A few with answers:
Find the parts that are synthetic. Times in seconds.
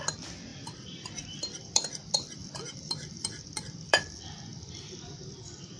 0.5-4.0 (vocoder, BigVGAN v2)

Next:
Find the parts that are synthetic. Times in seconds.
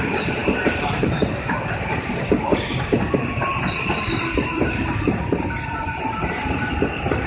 0.0-7.3 (vocoder, BigVGAN v2)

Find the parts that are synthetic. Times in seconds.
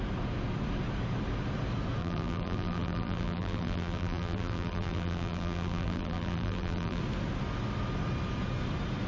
2.0-7.0 (vocoder, BigVGAN v2)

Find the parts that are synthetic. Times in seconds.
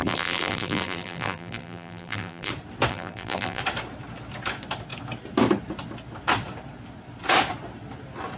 0.0-2.5 (vocoder, BigVGAN v2); 2.9-3.6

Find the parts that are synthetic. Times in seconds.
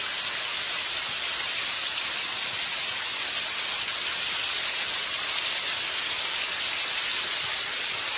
none